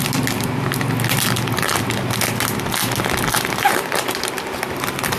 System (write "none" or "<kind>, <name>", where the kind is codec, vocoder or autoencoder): none